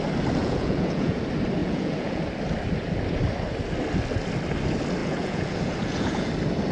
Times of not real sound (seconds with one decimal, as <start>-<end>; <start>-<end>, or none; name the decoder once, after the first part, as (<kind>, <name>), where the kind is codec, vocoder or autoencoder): 0.4-1.2 (vocoder, Vocos); 1.6-2.2; 5.0-6.3